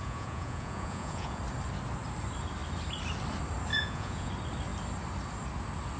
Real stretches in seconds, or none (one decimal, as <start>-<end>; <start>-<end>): 1.4-3.7; 4.3-6.0